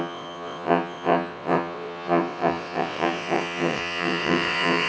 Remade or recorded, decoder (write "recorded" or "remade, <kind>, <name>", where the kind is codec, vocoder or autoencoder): remade, vocoder, WaveNeXt